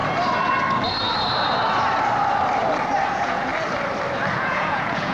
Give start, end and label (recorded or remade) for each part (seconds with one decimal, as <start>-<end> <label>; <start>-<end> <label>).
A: 0.0-3.1 recorded; 3.1-3.5 remade; 3.5-4.3 recorded; 4.3-5.1 remade